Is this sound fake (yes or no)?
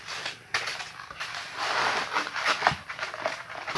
no